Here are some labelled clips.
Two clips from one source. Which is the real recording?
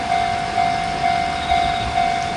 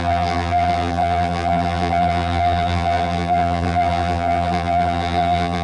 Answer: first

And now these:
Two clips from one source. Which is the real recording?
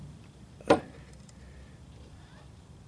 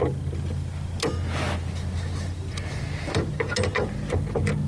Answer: second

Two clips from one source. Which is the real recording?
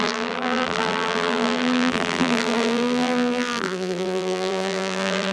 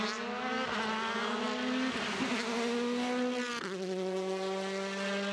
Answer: second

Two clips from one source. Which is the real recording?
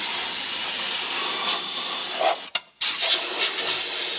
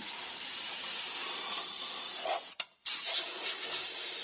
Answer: first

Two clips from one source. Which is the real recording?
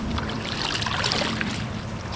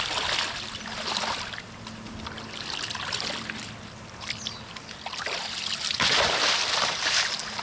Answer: second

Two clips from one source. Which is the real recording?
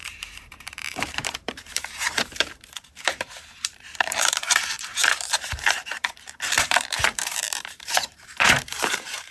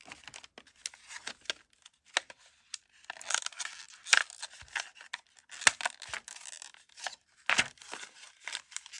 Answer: second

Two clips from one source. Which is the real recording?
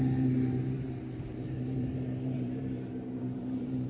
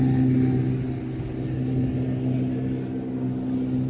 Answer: second